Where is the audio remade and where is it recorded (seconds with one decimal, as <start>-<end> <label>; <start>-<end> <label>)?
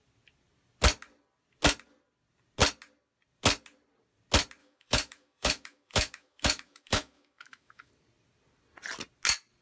0.0-4.6 recorded; 4.6-7.9 remade; 7.9-9.6 recorded